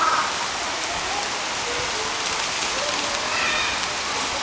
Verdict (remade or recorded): recorded